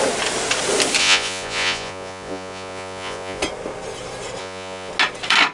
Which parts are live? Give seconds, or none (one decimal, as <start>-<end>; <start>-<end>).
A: 0.0-1.0; 3.4-4.4; 4.9-5.5